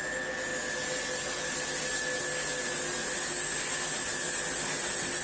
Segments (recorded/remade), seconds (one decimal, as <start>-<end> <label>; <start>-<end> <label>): 0.0-5.2 recorded